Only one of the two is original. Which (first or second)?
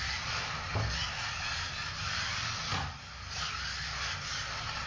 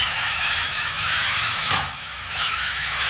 first